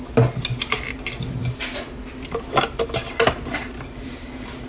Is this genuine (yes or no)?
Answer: yes